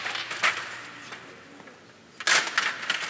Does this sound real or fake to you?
real